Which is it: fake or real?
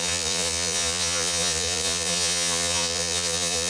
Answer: fake